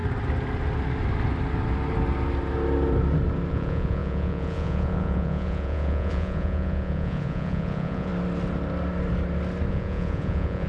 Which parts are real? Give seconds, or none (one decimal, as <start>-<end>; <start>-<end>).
0.0-3.5; 8.1-9.7